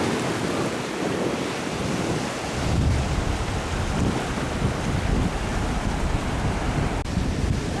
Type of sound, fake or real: real